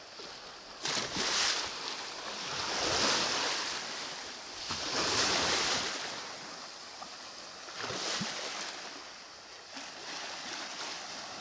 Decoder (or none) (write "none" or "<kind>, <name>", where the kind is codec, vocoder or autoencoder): none